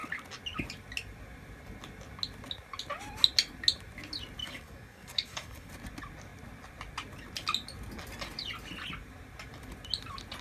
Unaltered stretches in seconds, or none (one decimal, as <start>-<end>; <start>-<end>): 0.0-4.4; 5.7-10.4